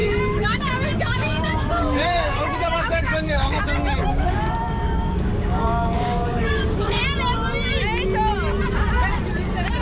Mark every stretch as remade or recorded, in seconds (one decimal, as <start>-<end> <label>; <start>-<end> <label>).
0.0-3.6 remade; 3.6-4.1 recorded; 4.1-7.0 remade; 7.0-9.8 recorded